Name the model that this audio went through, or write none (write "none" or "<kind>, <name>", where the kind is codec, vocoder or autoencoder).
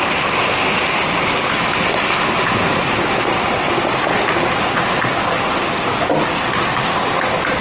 none